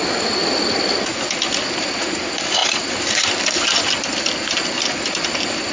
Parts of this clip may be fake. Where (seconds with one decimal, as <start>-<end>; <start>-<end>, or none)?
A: none